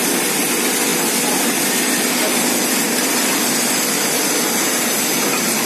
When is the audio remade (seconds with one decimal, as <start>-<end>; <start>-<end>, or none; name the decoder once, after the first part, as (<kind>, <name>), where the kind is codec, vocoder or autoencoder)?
0.9-4.3 (vocoder, BigVGAN v2)